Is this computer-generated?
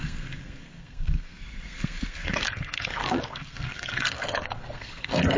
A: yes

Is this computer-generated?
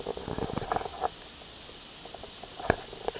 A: no